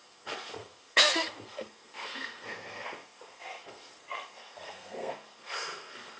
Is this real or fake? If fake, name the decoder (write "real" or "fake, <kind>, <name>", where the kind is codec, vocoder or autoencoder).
fake, codec, SNAC